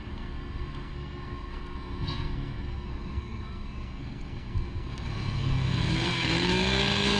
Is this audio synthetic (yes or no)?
yes